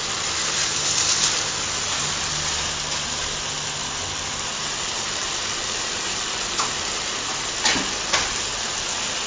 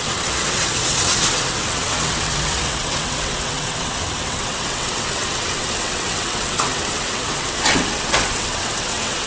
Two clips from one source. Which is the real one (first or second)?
first